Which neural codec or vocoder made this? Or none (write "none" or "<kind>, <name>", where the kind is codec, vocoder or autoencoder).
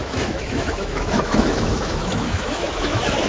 autoencoder, DAC-VAE